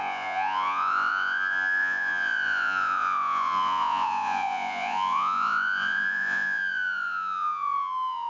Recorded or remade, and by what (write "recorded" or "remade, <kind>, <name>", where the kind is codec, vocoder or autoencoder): remade, vocoder, Vocos